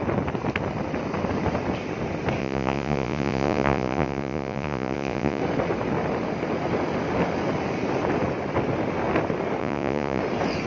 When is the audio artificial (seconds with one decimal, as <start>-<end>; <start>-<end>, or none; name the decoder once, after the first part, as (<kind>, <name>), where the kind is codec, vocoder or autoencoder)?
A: 2.4-5.4 (vocoder, Vocos); 9.6-10.2